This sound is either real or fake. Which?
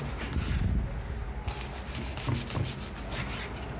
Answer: real